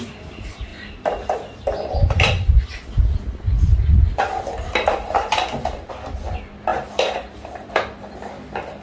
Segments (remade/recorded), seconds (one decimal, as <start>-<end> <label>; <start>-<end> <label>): 0.0-0.7 recorded; 0.7-5.9 remade; 5.9-6.7 recorded; 6.7-7.7 remade; 7.7-8.8 recorded